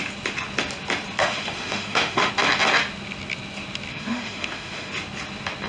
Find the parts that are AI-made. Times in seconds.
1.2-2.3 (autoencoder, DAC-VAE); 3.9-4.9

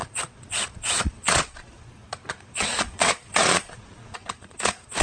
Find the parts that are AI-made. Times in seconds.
0.0-5.0 (vocoder, Vocos)

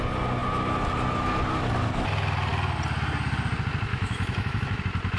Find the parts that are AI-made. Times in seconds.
3.9-4.8 (autoencoder, DAC-VAE)

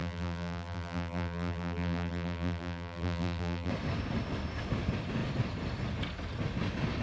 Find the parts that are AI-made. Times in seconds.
0.0-3.7 (vocoder, BigVGAN v2)

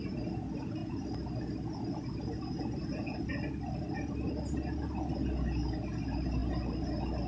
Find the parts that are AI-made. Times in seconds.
none

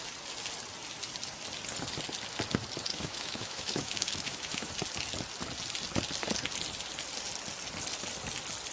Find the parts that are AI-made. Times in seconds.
2.9-4.7 (autoencoder, DAC-VAE)